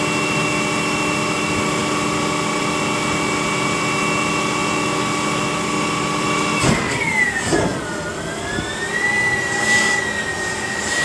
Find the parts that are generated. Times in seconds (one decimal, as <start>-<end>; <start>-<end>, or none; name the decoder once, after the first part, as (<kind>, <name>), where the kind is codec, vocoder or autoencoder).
none